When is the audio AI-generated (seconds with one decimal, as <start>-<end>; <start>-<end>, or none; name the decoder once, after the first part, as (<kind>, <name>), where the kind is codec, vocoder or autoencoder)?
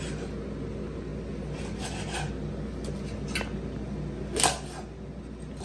none